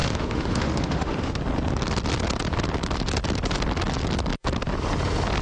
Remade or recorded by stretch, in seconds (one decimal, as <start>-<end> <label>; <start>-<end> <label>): 0.0-1.4 remade; 1.4-5.4 recorded